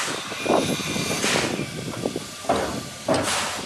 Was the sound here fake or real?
real